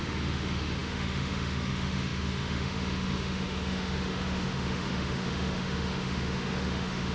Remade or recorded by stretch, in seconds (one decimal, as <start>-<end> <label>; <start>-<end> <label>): 0.0-7.1 remade